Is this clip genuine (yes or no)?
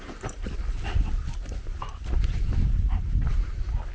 no